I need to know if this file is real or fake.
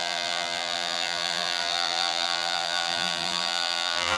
fake